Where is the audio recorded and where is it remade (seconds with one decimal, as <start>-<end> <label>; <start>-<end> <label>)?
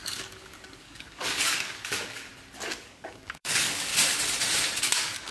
0.0-2.3 remade; 2.3-2.8 recorded; 2.8-3.9 remade; 3.9-4.8 recorded; 4.8-5.3 remade